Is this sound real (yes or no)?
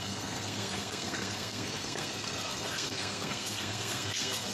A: no